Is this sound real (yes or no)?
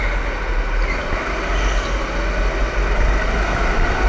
yes